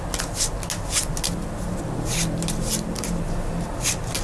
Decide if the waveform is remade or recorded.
recorded